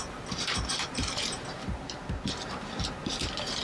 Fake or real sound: fake